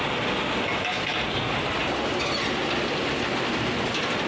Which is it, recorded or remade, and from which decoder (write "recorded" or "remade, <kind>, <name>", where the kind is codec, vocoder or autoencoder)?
recorded